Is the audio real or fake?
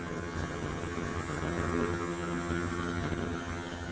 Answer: fake